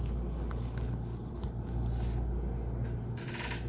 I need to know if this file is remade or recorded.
recorded